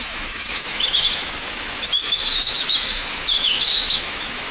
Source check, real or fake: fake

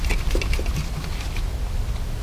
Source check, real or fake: real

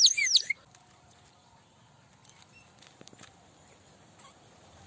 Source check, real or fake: real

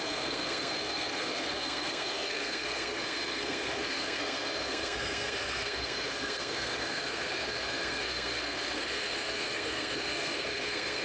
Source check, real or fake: fake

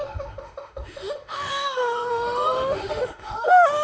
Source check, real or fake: fake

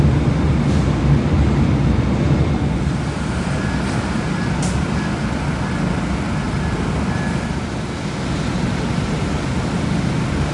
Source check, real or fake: real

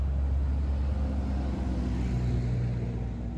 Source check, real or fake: real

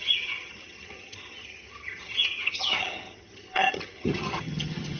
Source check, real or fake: fake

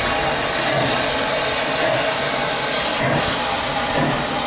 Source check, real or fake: real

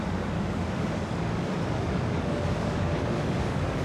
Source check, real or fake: fake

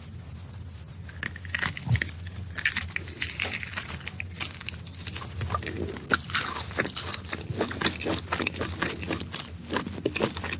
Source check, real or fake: real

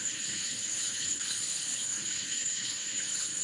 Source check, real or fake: fake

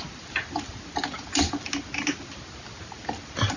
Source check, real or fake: real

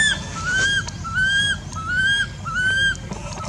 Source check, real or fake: real